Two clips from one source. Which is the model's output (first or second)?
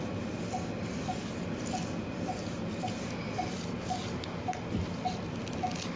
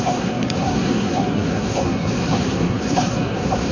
second